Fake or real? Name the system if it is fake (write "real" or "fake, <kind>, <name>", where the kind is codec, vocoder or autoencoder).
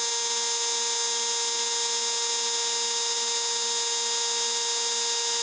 real